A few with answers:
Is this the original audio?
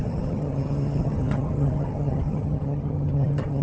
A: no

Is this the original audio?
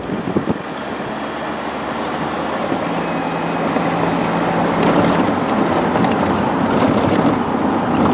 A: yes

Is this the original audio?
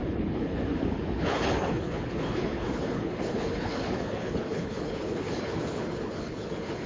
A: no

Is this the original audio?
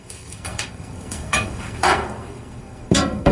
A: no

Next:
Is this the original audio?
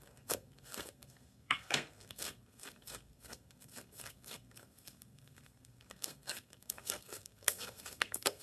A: no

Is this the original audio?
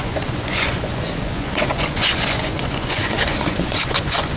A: no